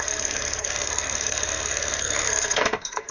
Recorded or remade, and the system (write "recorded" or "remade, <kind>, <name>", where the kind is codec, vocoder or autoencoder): remade, codec, SNAC